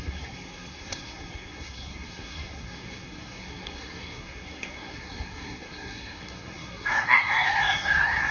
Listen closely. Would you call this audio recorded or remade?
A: remade